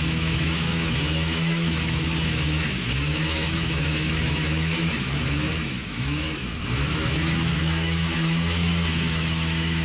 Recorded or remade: remade